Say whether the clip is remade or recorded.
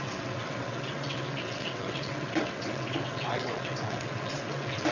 remade